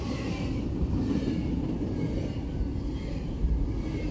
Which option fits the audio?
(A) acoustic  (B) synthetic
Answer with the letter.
A